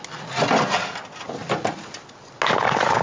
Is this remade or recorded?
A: recorded